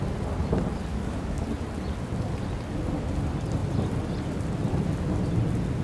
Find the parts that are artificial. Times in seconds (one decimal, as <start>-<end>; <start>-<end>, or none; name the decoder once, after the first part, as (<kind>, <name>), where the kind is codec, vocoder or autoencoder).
0.9-1.4 (codec, DAC)